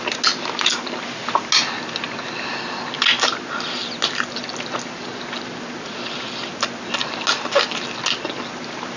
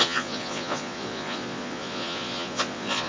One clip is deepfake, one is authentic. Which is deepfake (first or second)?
second